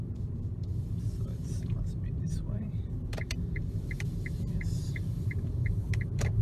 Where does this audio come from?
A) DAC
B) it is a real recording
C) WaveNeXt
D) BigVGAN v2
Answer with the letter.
D